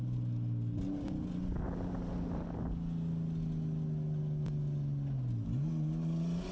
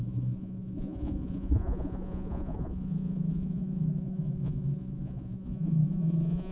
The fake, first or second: second